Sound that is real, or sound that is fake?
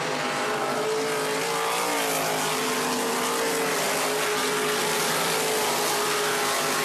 real